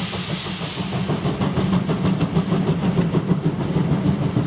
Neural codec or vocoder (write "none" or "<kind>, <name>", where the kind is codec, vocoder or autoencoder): none